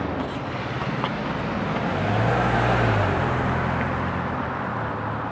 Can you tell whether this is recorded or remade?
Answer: recorded